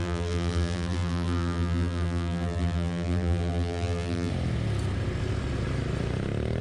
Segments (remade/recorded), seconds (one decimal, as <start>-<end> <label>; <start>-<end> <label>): 0.0-4.3 remade; 4.3-6.6 recorded